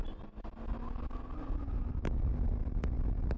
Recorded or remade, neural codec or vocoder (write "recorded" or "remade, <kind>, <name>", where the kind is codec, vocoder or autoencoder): recorded